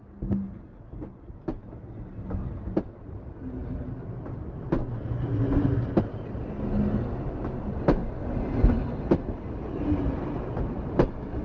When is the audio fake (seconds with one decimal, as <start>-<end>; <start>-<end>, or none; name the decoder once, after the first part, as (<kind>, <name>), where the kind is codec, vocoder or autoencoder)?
none